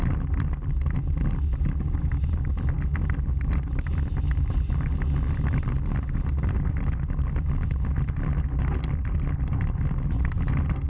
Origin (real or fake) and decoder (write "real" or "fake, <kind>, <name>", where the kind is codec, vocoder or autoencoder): real